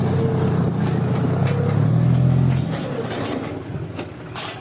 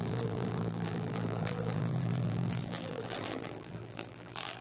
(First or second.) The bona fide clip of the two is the first